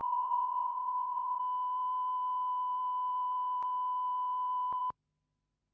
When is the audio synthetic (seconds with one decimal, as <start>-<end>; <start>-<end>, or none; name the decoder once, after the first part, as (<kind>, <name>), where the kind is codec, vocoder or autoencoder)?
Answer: 0.0-1.4 (vocoder, Vocos)